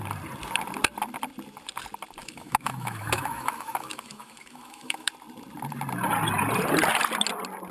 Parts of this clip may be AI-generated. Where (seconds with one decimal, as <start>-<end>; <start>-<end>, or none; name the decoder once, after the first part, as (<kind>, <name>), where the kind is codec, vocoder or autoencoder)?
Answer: 2.2-5.1 (autoencoder, DAC-VAE)